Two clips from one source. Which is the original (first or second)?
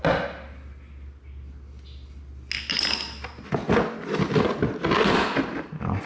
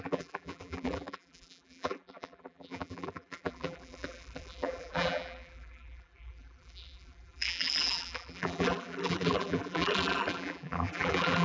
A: first